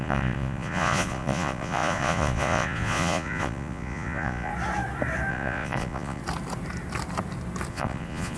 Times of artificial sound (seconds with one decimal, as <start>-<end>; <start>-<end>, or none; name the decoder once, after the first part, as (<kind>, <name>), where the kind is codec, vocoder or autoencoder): 0.0-4.5 (vocoder, Vocos); 5.3-6.2; 7.7-8.4